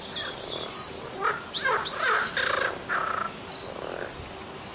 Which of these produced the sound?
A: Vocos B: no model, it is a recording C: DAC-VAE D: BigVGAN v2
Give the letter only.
B